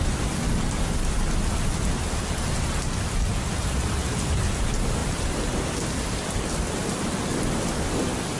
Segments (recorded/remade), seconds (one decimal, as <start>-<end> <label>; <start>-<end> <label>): 0.0-5.0 recorded; 5.0-6.8 remade; 6.8-8.4 recorded